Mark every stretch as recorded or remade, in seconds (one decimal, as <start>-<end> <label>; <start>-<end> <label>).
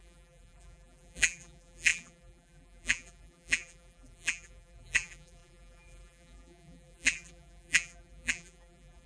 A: 0.0-9.1 remade